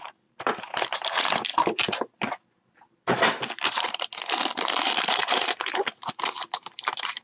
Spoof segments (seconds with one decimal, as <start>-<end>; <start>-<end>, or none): 0.0-1.5; 5.0-7.2